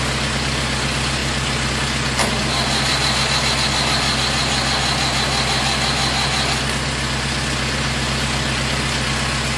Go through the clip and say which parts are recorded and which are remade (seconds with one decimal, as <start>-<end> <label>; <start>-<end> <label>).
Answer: 0.0-1.2 recorded; 1.2-1.7 remade; 1.7-9.6 recorded